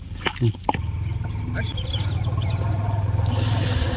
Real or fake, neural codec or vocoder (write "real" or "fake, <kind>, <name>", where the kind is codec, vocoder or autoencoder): real